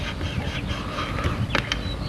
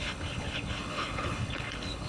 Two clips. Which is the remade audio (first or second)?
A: second